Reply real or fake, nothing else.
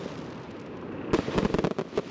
real